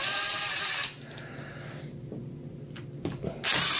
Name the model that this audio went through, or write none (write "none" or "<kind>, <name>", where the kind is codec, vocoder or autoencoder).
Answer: none